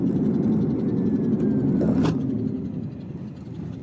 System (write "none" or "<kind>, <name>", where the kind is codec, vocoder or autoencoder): none